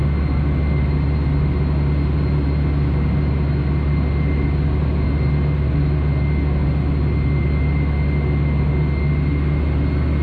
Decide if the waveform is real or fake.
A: real